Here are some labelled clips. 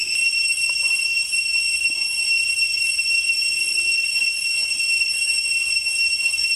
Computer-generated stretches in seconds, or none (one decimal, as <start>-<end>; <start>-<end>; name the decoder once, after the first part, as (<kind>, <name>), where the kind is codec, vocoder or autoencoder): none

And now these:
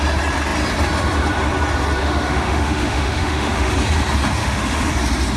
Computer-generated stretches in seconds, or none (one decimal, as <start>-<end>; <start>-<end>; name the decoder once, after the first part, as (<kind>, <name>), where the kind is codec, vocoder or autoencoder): 2.0-3.7 (autoencoder, DAC-VAE); 4.4-4.9

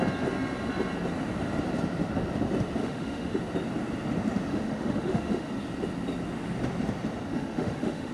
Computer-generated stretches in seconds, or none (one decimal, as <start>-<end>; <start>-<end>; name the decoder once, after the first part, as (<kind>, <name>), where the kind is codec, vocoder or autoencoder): 2.8-3.4 (autoencoder, DAC-VAE); 4.5-5.5; 7.3-8.1

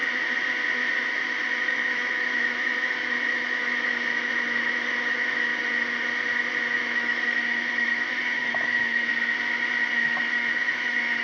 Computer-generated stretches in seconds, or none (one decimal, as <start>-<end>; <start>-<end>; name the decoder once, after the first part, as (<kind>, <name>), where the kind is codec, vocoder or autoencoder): 1.5-5.5 (autoencoder, DAC-VAE); 6.8-9.1; 9.9-11.2